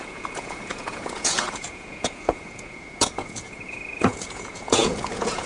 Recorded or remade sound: remade